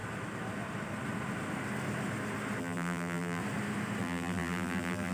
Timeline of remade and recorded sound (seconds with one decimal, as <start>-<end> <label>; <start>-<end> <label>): 0.0-2.6 recorded; 2.6-3.4 remade; 3.4-4.0 recorded; 4.0-5.1 remade